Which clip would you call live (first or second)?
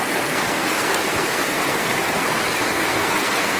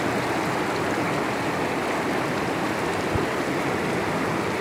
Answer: second